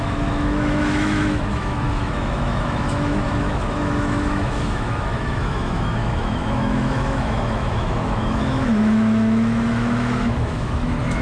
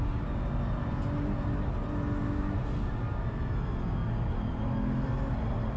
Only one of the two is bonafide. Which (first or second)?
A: second